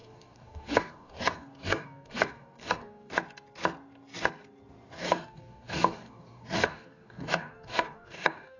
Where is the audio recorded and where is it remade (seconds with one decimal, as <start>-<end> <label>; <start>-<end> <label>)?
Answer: 0.0-3.1 remade; 3.1-5.0 recorded; 5.0-8.6 remade